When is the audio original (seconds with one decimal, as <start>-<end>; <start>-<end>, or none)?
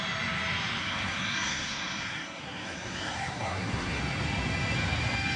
0.0-0.8; 4.0-5.4